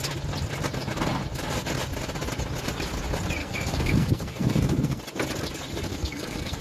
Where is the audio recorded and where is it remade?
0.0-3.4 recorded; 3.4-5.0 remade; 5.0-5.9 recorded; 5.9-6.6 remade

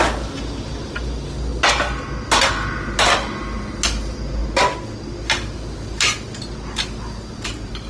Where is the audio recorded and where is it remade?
0.0-7.9 recorded

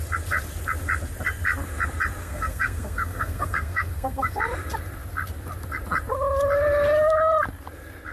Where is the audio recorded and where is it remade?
0.0-2.2 recorded; 2.2-4.4 remade; 4.4-8.1 recorded

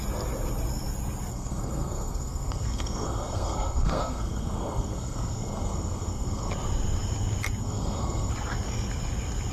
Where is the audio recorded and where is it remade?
0.0-1.3 recorded; 1.3-6.5 remade; 6.5-7.6 recorded; 7.6-8.3 remade; 8.3-9.5 recorded

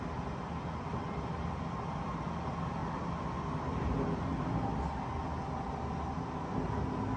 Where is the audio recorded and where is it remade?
0.0-7.2 recorded

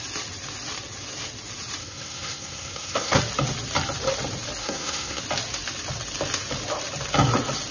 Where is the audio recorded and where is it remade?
0.0-1.8 recorded; 1.8-3.2 remade; 3.2-4.6 recorded; 4.6-5.2 remade; 5.2-7.7 recorded

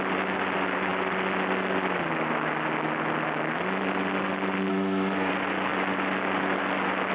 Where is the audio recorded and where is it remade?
0.0-4.7 recorded; 4.7-5.3 remade; 5.3-7.1 recorded

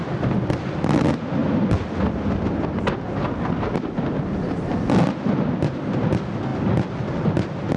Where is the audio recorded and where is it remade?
0.0-7.8 recorded